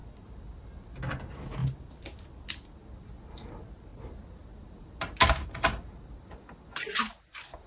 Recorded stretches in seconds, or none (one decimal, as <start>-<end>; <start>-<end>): 0.0-7.7